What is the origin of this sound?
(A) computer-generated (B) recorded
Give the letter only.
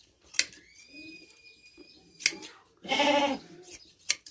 B